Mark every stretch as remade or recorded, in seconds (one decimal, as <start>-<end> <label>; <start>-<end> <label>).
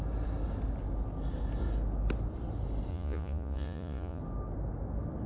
0.0-2.9 recorded; 2.9-4.2 remade; 4.2-5.3 recorded